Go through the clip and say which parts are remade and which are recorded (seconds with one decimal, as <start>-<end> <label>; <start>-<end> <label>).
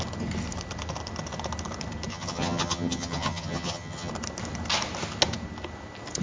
0.0-2.1 recorded; 2.1-4.1 remade; 4.1-6.2 recorded